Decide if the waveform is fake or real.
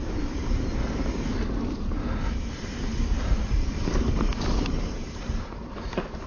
fake